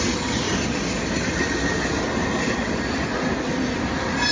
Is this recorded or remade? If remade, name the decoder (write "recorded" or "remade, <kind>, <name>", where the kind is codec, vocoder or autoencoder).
recorded